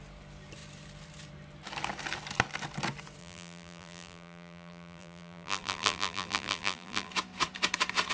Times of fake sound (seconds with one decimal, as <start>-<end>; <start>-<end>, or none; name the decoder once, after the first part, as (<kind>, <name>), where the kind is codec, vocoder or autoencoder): 3.2-7.1 (vocoder, BigVGAN v2)